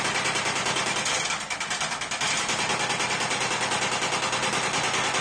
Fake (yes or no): no